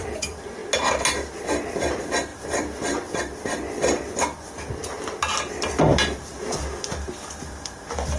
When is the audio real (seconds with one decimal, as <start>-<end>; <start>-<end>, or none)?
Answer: 0.6-1.2; 4.8-5.3; 5.9-7.4